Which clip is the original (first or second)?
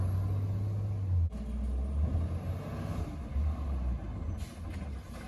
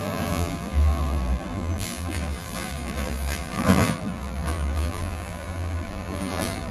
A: first